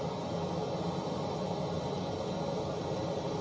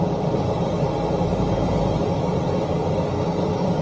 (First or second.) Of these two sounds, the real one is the first